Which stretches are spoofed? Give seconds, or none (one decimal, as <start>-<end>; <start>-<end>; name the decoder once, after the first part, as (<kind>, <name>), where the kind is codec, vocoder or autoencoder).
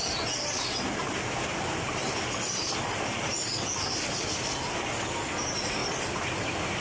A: none